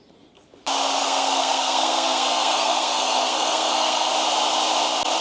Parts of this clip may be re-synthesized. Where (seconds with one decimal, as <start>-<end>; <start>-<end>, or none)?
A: 1.0-4.1